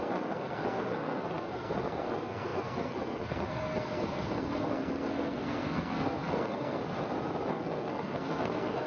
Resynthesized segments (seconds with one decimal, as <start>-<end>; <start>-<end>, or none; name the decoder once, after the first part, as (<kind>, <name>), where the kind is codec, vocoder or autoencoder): 0.0-6.8 (codec, SNAC); 7.5-8.9

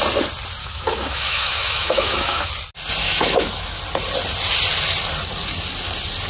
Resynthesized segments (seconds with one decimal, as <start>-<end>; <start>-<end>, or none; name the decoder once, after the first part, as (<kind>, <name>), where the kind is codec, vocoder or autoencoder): 0.6-2.5 (autoencoder, DAC-VAE); 3.0-3.8

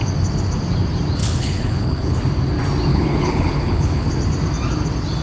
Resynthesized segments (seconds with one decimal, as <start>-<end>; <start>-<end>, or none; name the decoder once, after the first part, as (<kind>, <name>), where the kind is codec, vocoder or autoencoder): 1.2-2.2 (codec, HILCodec); 2.9-4.1

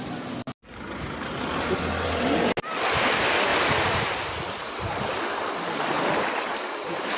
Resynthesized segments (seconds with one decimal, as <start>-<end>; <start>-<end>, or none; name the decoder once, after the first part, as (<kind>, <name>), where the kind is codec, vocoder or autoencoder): none

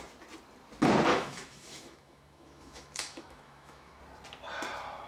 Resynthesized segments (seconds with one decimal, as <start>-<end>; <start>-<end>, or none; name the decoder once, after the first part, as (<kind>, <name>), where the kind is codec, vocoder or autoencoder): 1.1-4.0 (autoencoder, DAC-VAE)

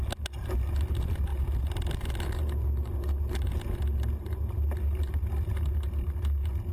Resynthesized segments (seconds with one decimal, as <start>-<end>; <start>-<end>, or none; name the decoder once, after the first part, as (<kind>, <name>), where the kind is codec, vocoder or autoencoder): none